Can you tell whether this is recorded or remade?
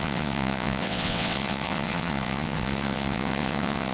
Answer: remade